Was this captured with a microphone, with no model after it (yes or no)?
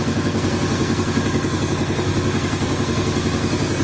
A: no